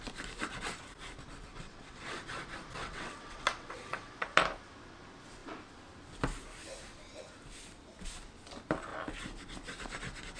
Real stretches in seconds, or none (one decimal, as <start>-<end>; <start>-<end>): 0.0-1.5; 2.2-2.8; 4.1-10.4